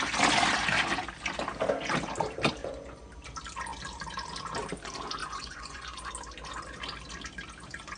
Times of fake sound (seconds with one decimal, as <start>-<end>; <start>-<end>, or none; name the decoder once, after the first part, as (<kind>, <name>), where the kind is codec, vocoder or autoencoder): 2.6-3.1 (vocoder, Vocos); 5.2-6.1